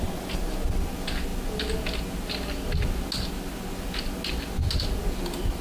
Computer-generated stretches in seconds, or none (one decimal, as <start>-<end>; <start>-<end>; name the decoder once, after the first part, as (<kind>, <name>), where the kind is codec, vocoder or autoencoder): none